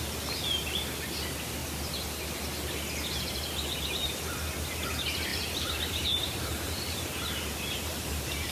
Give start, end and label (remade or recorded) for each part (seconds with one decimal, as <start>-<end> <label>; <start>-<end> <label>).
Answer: 0.0-5.3 recorded; 5.3-8.5 remade